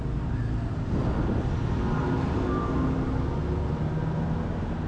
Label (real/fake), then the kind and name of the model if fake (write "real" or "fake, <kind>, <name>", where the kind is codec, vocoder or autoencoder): real